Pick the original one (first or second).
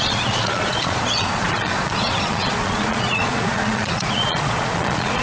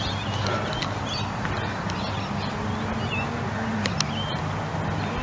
second